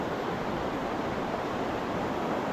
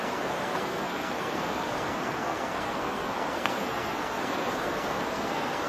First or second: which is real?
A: first